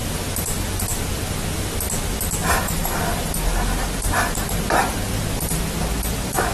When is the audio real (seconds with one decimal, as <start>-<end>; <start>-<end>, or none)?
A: 0.0-2.4; 3.2-6.5